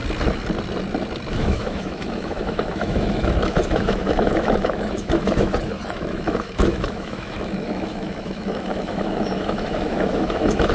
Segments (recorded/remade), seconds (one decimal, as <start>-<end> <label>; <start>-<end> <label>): 0.0-1.3 recorded; 1.3-10.7 remade